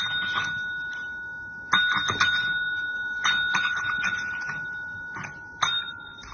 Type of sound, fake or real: real